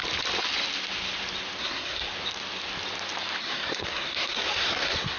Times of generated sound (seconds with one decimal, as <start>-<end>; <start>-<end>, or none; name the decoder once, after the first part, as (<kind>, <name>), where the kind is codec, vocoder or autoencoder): 1.6-2.1 (codec, SNAC); 3.4-5.2